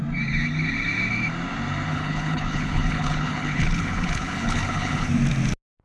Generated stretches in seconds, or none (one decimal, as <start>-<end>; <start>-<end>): 1.9-5.1